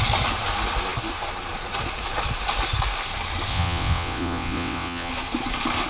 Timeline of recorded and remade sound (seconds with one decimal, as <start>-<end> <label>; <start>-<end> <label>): 0.0-3.5 recorded; 3.5-5.1 remade; 5.1-5.9 recorded

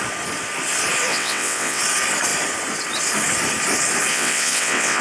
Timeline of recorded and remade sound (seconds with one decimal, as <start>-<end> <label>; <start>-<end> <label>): 0.0-1.1 recorded; 1.1-1.8 remade; 1.8-4.1 recorded; 4.1-5.0 remade

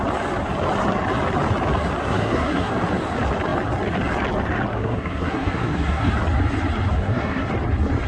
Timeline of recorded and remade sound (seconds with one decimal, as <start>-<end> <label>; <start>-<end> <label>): 0.0-2.0 recorded; 2.0-2.7 remade; 2.7-4.7 recorded; 4.7-6.1 remade; 6.1-6.9 recorded; 6.9-7.5 remade; 7.5-8.1 recorded

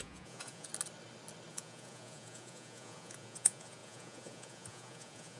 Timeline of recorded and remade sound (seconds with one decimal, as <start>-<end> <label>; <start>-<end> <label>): 0.0-0.7 remade; 0.7-1.5 recorded; 1.5-5.4 remade

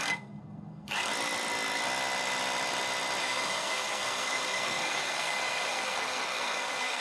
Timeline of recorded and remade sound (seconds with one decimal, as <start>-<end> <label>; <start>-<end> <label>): 0.0-1.1 remade; 1.1-3.2 recorded; 3.2-7.0 remade